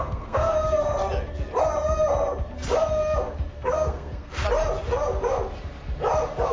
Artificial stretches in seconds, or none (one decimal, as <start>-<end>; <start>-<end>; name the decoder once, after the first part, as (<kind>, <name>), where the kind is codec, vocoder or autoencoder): 0.0-0.5 (codec, SNAC); 3.5-4.4